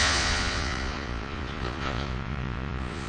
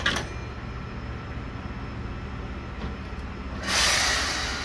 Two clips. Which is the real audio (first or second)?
second